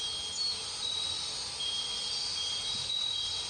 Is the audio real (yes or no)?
yes